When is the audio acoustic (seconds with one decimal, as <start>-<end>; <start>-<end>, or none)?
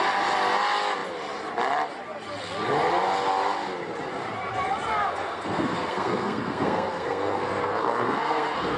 0.0-5.0